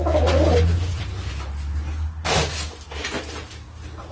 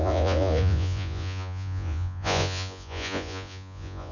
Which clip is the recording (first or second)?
first